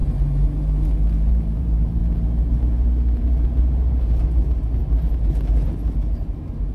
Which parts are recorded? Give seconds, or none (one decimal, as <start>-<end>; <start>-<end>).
0.0-1.3; 2.0-3.2